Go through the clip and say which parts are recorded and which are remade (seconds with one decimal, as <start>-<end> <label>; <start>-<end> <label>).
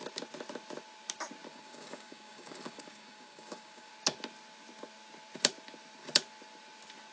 0.0-1.5 recorded; 1.5-3.9 remade; 3.9-7.1 recorded